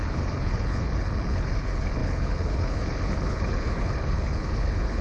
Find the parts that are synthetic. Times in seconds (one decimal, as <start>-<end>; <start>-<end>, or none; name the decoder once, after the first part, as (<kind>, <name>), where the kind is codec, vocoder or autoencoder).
0.0-5.0 (codec, HILCodec)